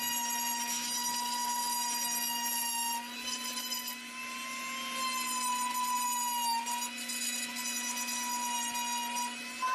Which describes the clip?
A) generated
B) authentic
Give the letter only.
B